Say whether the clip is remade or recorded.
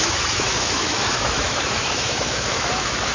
remade